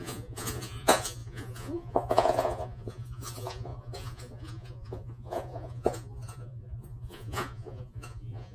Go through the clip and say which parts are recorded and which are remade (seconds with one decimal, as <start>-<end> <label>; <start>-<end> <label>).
0.0-8.5 remade